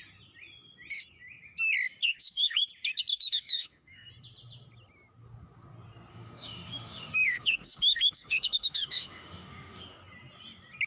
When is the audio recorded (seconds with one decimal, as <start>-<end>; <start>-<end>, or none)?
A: 0.0-2.0; 2.7-3.1; 4.1-6.1; 9.8-10.9